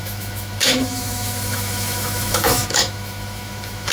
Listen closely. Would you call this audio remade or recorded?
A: remade